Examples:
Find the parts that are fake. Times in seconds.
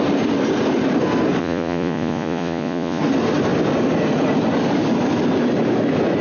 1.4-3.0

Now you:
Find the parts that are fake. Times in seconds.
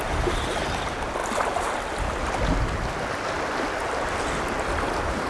none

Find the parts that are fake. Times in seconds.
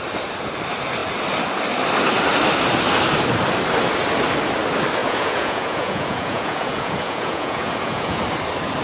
5.0-8.2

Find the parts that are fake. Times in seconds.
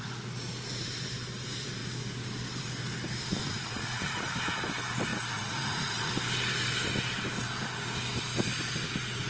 3.4-4.3; 5.1-6.1